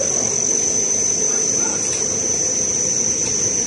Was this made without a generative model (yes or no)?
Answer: yes